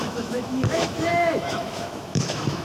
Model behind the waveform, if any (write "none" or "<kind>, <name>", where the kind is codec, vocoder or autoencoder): autoencoder, DAC-VAE